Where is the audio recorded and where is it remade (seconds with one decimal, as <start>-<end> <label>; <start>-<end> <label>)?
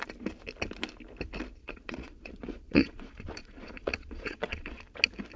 0.0-1.6 recorded; 1.6-4.8 remade; 4.8-5.4 recorded